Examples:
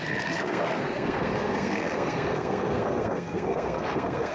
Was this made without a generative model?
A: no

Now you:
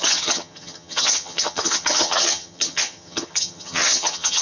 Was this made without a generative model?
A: no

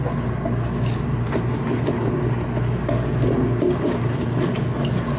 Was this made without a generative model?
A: yes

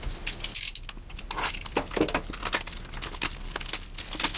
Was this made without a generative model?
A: yes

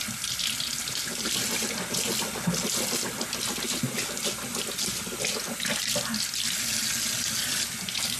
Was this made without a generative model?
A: yes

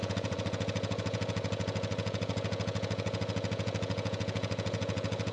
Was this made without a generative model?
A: no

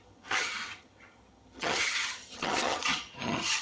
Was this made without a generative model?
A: no